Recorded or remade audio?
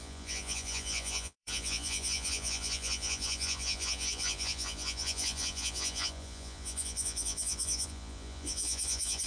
remade